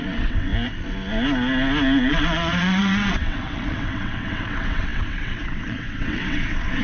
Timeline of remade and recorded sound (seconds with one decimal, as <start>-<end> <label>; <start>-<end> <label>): 0.0-0.5 remade; 0.5-2.1 recorded; 2.1-6.8 remade